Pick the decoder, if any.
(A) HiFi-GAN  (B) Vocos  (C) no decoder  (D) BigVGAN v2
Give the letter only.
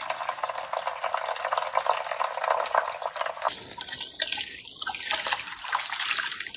C